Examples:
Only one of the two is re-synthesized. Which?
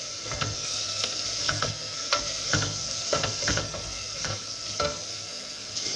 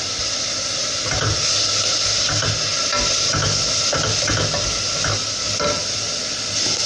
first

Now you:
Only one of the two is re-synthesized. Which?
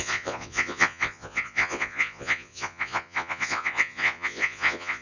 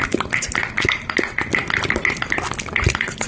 first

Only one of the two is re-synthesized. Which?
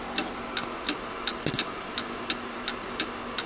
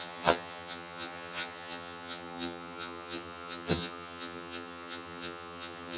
second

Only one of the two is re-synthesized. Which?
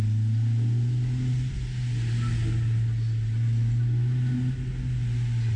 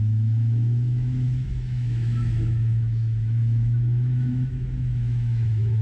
second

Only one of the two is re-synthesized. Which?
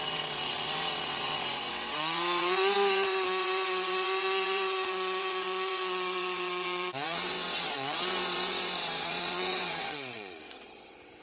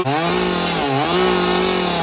first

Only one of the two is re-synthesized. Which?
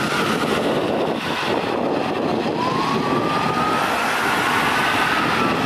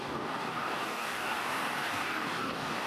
second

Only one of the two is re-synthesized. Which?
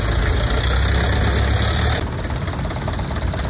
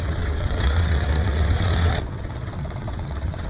second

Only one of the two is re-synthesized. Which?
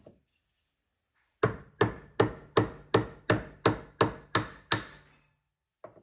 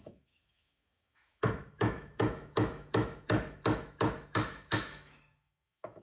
second